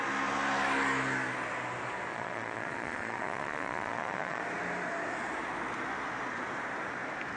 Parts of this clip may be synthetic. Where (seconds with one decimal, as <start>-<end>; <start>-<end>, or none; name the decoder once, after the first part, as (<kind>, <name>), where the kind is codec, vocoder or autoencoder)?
2.1-4.4 (vocoder, Vocos)